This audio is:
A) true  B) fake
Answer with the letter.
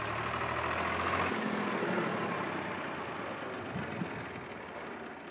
A